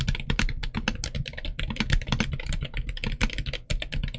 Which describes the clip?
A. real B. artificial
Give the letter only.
A